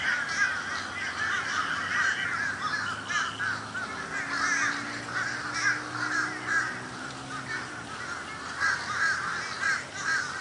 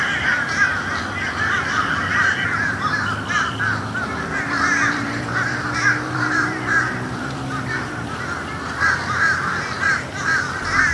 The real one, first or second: first